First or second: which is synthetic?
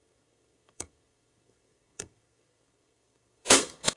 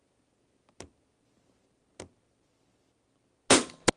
first